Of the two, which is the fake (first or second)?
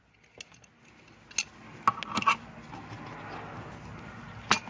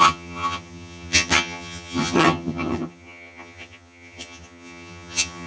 second